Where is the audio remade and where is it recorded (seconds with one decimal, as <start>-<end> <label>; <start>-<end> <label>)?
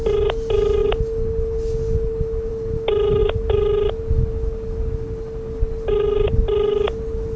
0.0-7.4 recorded